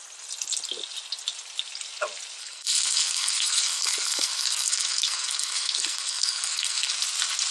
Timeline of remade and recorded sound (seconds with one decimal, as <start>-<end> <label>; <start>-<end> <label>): 0.0-2.4 recorded; 2.4-6.9 remade; 6.9-7.5 recorded